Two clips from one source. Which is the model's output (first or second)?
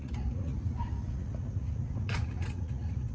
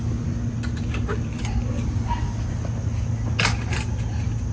first